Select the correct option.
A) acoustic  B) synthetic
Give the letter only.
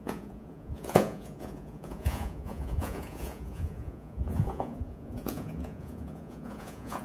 B